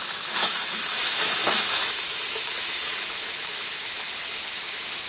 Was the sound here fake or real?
fake